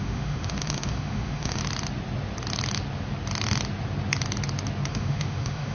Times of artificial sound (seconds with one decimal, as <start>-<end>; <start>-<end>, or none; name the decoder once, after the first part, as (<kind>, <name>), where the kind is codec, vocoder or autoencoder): 0.0-1.6 (autoencoder, DAC-VAE); 4.9-5.7